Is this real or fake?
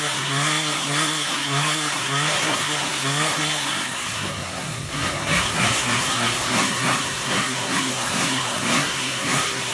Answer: fake